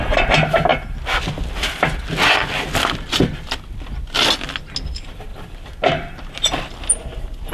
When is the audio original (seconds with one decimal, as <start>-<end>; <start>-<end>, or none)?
0.0-7.5